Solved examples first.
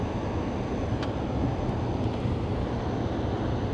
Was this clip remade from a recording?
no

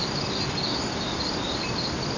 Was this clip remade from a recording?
no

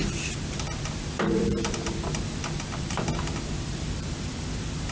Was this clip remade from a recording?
yes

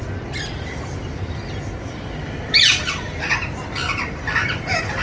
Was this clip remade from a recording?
no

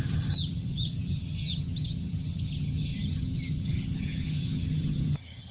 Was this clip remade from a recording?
yes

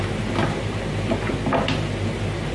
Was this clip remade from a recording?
no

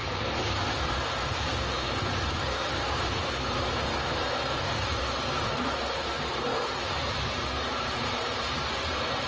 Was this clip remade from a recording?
yes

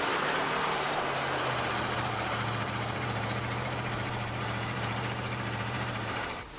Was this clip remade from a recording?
yes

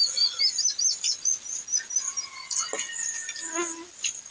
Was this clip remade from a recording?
no